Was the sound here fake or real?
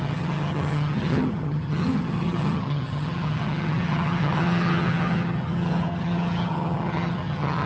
fake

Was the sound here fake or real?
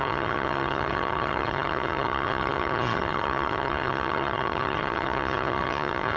fake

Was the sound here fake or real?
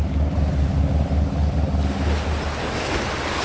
real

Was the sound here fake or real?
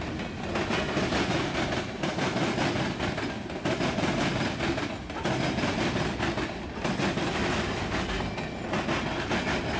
real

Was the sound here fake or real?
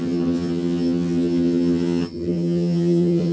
fake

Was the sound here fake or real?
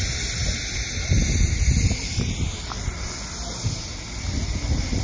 real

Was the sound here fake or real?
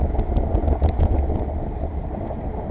real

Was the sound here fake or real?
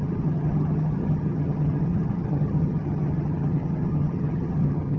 fake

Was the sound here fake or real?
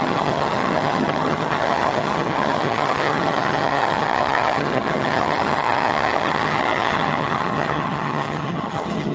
fake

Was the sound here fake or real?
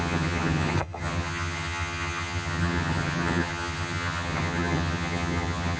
fake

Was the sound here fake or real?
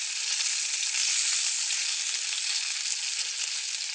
real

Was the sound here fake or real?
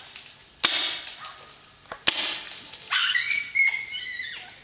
real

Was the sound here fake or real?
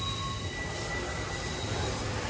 real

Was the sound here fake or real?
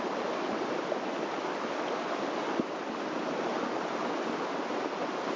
real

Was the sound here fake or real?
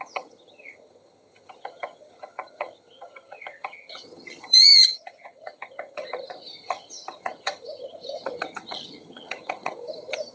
fake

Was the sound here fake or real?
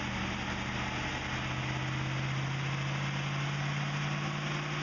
real